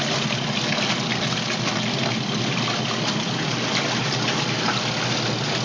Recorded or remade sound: recorded